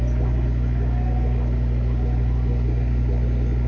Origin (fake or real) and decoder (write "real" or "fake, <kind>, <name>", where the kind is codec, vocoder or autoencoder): real